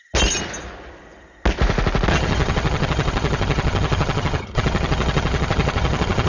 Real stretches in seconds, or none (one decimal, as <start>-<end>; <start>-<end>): 0.0-2.1